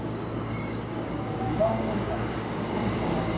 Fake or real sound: fake